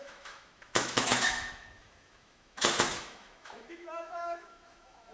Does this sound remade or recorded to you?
remade